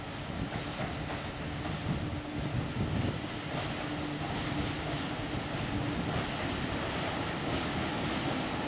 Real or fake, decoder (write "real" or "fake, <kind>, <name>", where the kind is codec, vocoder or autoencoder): real